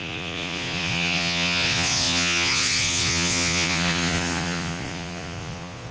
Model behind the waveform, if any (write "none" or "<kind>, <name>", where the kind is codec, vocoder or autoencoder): vocoder, Vocos